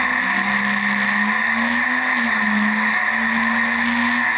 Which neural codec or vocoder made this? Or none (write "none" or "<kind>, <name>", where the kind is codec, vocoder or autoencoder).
none